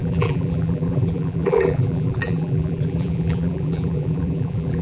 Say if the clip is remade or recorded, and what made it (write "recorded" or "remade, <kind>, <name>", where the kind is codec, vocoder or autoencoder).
remade, vocoder, BigVGAN v2